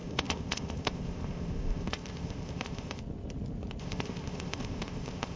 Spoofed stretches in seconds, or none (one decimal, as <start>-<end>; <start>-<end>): 0.0-3.0; 3.8-5.4

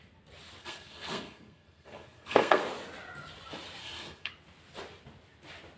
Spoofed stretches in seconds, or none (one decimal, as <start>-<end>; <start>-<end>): 0.6-2.6; 3.8-4.3

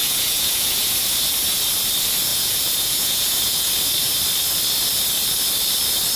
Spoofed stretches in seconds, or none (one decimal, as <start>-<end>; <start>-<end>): 0.0-1.1; 2.3-3.7

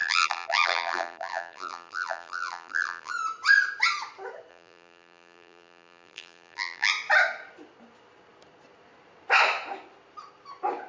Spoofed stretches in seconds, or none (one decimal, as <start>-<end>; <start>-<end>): 0.0-3.1; 4.5-6.9

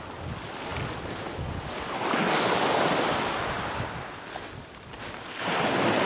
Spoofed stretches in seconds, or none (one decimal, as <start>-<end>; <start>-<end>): none